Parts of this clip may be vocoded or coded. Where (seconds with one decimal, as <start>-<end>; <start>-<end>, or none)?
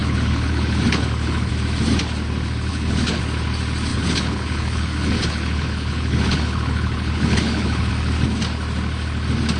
0.0-1.5; 2.7-3.2; 3.9-7.9